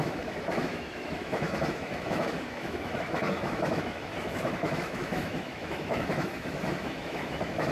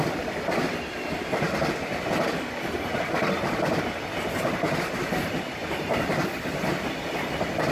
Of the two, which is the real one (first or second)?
second